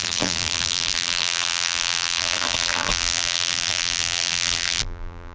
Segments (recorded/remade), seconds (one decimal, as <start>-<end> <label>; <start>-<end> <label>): 0.0-5.3 remade